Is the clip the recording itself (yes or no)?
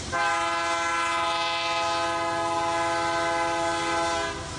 yes